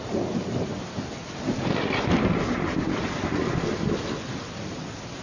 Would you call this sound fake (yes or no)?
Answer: no